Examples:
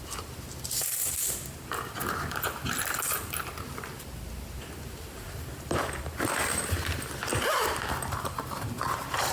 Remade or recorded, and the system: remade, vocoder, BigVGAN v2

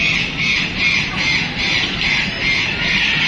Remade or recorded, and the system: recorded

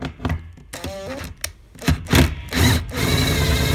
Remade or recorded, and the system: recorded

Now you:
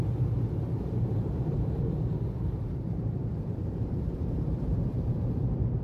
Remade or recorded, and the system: remade, vocoder, BigVGAN v2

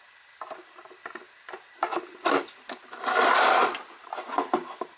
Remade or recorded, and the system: recorded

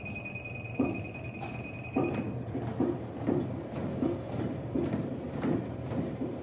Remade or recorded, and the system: remade, vocoder, BigVGAN v2